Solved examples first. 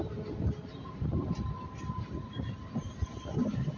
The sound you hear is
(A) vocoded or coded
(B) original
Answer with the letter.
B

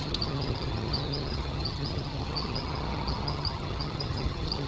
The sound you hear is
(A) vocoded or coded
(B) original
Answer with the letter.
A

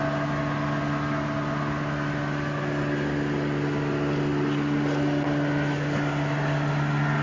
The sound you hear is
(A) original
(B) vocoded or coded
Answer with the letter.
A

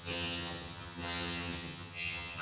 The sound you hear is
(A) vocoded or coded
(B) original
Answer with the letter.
A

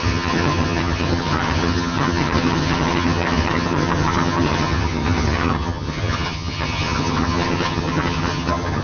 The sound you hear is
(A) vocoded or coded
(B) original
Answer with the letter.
A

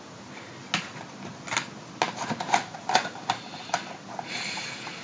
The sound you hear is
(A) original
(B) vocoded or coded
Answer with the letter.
A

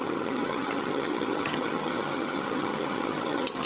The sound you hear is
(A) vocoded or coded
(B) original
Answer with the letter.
A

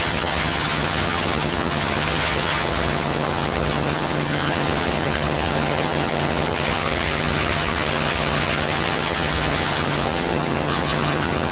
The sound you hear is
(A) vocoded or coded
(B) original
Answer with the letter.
A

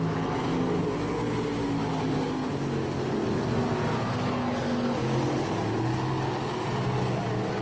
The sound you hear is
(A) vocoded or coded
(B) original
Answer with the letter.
B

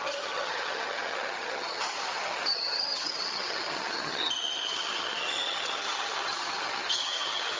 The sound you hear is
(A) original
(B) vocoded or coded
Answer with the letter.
B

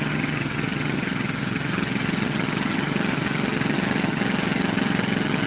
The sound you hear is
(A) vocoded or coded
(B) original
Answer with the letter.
A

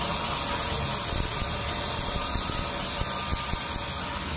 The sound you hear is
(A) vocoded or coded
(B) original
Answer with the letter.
B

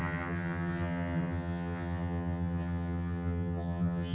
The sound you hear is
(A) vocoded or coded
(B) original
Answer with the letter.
A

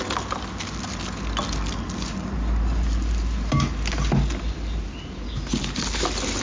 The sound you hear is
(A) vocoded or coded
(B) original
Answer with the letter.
B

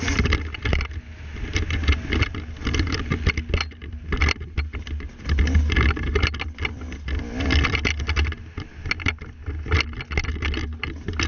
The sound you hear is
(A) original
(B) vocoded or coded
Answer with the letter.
A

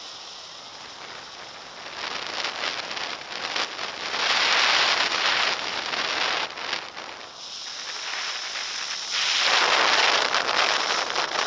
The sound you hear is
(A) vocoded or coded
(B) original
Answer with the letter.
B